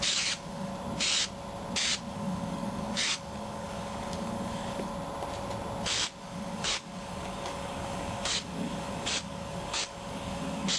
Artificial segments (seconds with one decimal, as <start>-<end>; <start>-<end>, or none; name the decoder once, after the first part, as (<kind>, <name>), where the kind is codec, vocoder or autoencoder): 0.0-0.7 (codec, DAC); 2.1-4.9; 6.2-10.8